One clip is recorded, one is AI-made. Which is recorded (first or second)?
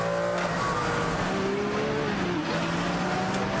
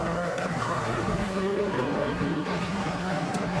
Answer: first